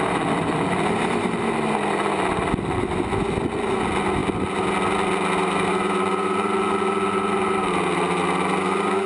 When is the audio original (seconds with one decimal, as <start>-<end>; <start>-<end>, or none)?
0.0-9.1